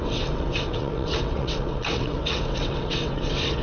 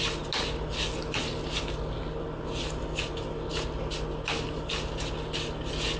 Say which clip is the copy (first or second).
first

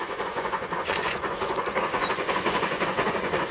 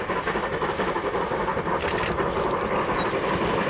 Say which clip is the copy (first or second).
first